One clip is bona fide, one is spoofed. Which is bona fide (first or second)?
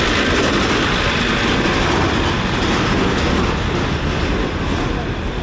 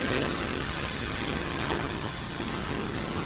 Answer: first